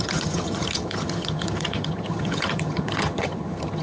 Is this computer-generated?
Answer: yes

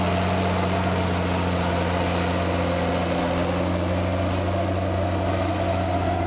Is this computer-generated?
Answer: no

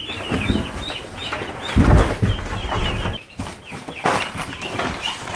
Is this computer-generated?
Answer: no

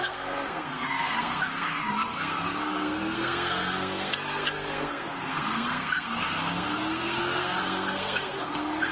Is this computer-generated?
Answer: yes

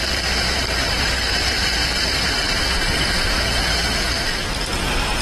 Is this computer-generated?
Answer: yes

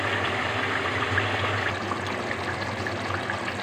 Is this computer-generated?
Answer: no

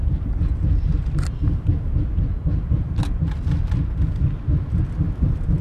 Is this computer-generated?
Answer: no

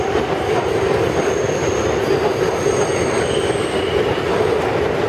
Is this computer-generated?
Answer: no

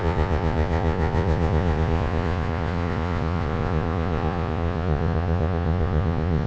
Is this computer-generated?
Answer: yes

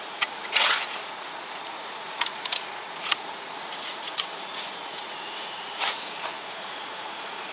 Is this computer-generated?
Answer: yes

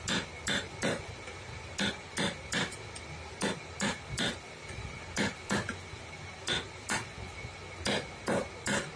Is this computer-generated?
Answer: no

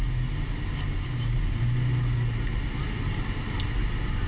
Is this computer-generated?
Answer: no